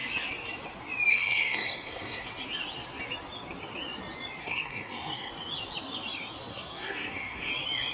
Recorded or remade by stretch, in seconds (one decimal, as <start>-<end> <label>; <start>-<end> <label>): 0.0-1.1 recorded; 1.1-2.3 remade; 2.3-4.4 recorded; 4.4-5.3 remade; 5.3-6.5 recorded; 6.5-7.5 remade; 7.5-7.9 recorded